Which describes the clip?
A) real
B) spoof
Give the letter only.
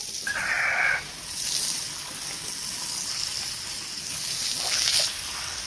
A